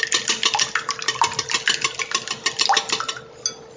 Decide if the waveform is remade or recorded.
recorded